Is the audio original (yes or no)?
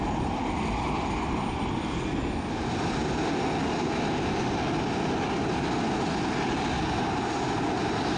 yes